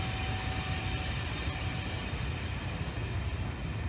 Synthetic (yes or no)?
no